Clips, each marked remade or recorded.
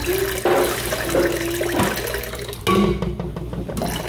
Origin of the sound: recorded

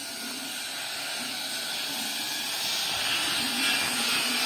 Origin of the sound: recorded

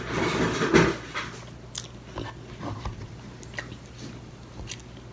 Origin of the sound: recorded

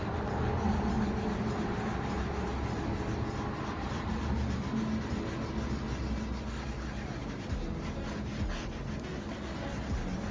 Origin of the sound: recorded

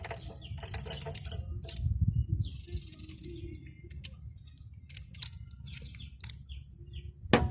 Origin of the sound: recorded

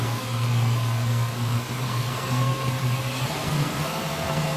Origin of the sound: remade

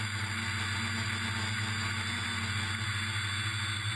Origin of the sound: recorded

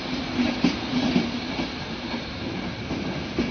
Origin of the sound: recorded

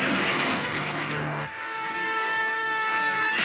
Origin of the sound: remade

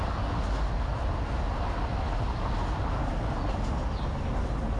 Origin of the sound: recorded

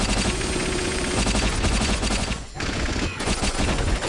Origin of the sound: remade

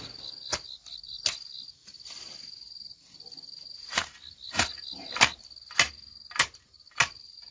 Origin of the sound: recorded